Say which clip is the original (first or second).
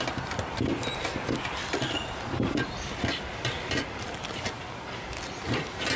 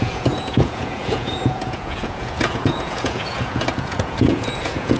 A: first